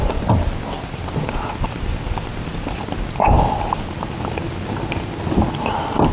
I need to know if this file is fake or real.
real